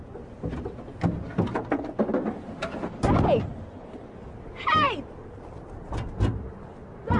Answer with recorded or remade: recorded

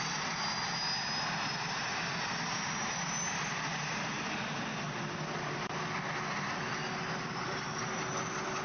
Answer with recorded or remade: recorded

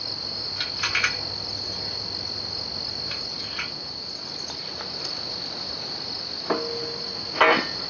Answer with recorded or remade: recorded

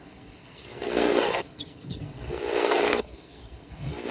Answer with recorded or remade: remade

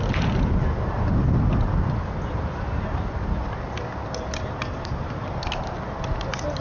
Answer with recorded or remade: recorded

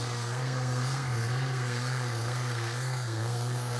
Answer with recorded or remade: remade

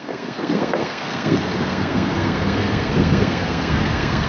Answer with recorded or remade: remade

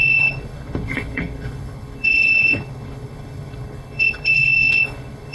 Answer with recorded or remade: remade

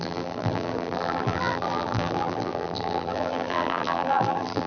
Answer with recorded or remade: remade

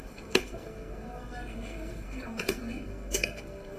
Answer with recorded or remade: remade